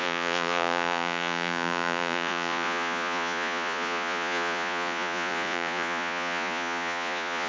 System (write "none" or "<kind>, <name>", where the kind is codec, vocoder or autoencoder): vocoder, Vocos